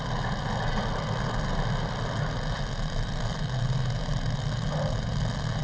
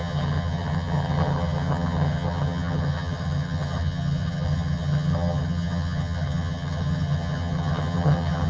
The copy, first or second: second